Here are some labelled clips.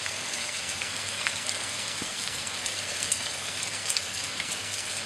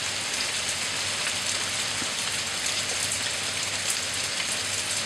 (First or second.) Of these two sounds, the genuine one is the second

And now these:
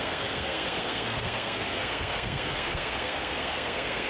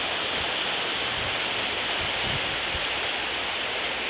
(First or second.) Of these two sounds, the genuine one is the second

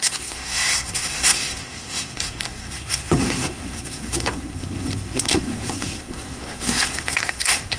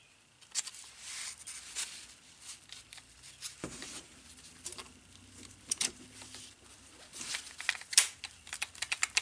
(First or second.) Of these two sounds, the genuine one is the second